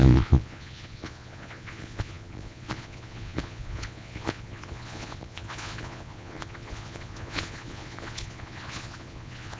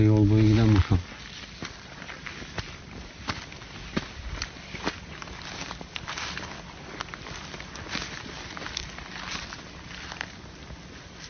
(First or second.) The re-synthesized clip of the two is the first